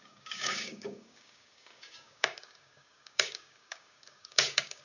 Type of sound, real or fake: fake